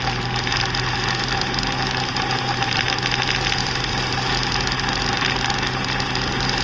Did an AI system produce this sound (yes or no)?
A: no